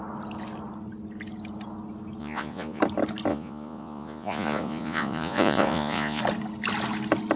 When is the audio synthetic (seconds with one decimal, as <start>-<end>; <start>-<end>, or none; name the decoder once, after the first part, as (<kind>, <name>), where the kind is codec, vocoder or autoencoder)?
2.2-2.8 (vocoder, Vocos); 3.3-6.2